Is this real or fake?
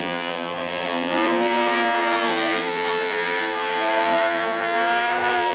fake